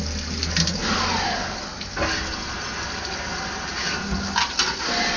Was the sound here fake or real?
real